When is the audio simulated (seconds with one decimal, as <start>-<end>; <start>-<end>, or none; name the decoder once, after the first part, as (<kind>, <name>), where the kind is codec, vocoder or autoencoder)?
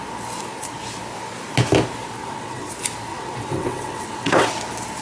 2.2-2.7 (vocoder, WaveNeXt); 3.1-4.5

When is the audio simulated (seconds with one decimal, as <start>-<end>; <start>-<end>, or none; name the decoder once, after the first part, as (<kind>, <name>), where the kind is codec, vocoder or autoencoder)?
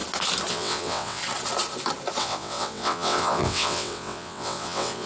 0.5-1.2 (vocoder, WaveNeXt); 2.2-5.1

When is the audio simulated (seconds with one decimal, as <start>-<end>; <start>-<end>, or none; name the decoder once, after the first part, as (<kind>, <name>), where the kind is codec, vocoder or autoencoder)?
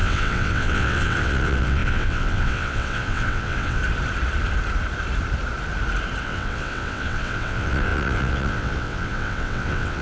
0.0-3.8 (vocoder, WaveNeXt); 6.2-10.0